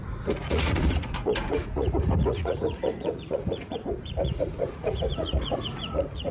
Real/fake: fake